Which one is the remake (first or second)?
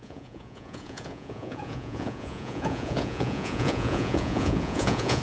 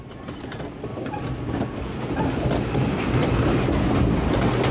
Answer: first